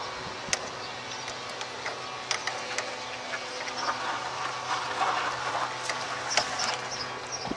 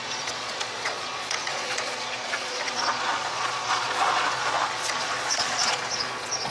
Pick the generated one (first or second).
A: second